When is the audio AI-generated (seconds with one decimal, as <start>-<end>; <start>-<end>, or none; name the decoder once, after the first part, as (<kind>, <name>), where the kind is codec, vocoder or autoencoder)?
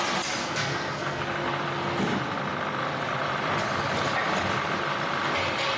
0.4-1.2 (codec, SNAC)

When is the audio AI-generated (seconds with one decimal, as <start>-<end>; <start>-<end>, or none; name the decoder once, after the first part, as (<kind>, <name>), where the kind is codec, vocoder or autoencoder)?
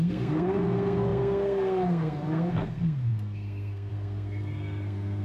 0.0-5.2 (codec, SNAC)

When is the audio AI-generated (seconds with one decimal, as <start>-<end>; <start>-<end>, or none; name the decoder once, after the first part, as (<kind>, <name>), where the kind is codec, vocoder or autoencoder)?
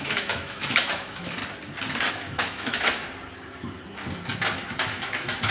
0.0-1.4 (autoencoder, DAC-VAE); 2.1-3.0; 4.9-5.5